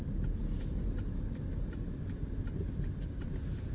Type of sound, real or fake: real